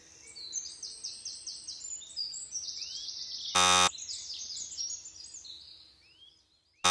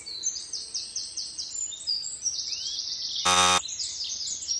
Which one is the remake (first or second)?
second